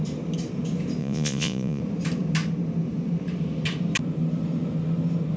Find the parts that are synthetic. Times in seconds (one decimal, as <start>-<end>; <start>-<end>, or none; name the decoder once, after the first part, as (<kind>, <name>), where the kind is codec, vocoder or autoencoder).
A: 1.0-1.8 (vocoder, Vocos)